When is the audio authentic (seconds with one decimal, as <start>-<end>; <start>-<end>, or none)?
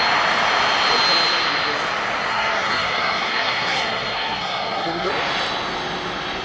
0.0-2.3; 5.1-6.4